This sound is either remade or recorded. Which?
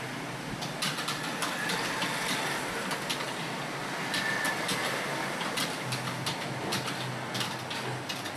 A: recorded